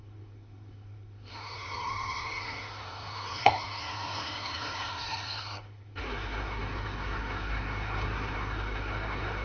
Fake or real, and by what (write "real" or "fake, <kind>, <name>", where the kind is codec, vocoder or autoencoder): fake, codec, SNAC